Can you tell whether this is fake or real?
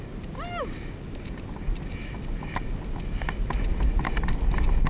real